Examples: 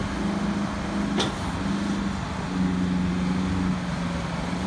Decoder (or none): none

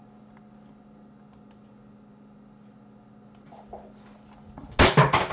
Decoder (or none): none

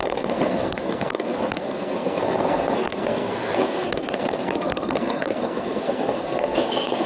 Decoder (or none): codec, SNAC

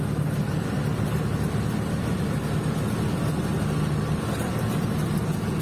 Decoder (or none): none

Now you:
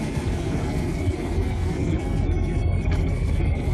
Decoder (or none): codec, SNAC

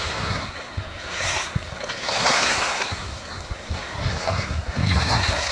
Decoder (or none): codec, SNAC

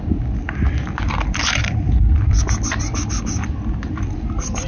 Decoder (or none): none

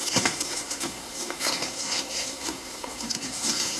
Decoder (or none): codec, SNAC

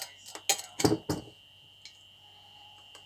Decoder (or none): none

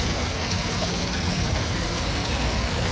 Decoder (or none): codec, SNAC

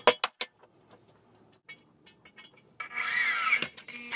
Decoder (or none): none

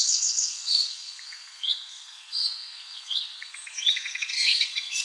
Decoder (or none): codec, SNAC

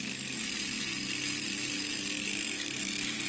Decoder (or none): none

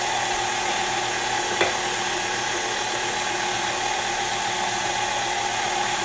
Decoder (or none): none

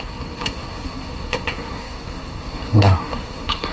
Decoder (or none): codec, SNAC